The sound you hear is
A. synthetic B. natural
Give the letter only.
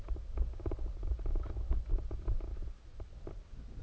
B